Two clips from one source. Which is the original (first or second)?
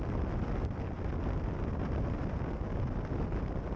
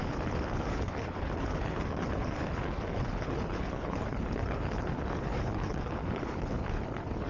first